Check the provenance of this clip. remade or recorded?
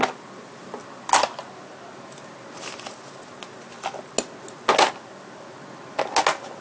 recorded